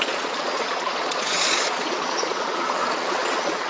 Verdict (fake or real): fake